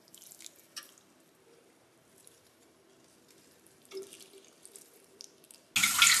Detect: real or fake real